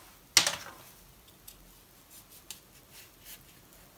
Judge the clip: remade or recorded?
recorded